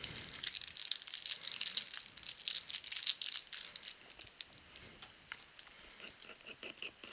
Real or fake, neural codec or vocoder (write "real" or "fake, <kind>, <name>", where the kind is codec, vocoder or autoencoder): real